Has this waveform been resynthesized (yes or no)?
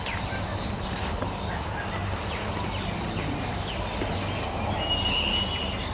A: no